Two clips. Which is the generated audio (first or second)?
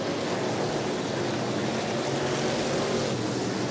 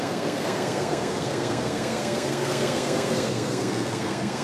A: second